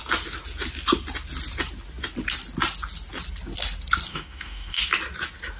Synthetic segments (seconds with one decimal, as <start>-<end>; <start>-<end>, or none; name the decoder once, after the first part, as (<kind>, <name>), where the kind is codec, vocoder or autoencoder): 4.1-4.8 (autoencoder, DAC-VAE)